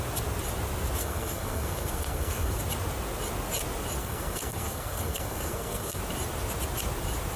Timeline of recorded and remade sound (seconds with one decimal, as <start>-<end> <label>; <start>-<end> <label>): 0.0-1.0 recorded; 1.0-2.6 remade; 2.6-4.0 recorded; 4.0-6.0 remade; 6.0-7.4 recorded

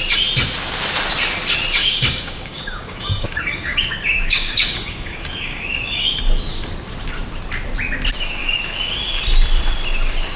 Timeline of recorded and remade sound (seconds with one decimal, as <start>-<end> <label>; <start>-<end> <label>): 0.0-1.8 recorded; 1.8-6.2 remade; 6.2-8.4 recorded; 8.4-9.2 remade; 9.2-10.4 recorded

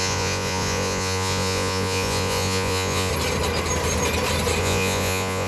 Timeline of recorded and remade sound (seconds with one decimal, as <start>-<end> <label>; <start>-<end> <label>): 0.0-3.1 remade; 3.1-4.6 recorded; 4.6-5.5 remade

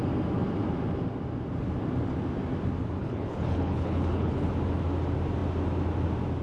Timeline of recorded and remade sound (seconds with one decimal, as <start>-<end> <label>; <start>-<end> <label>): 0.0-3.0 recorded; 3.0-4.5 remade; 4.5-6.4 recorded